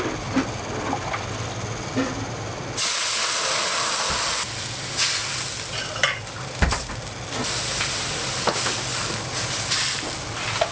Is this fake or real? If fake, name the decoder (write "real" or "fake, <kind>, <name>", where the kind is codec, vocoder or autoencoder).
real